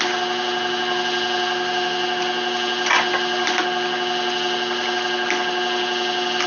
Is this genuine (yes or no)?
yes